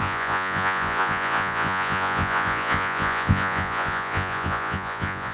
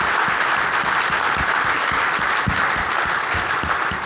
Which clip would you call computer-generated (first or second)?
first